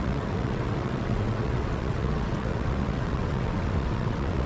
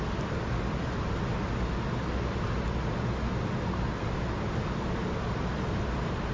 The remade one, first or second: first